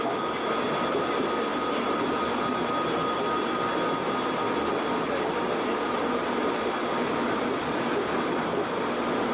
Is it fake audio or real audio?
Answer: real